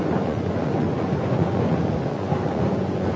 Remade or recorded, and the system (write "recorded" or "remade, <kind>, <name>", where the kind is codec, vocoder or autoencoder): remade, vocoder, Vocos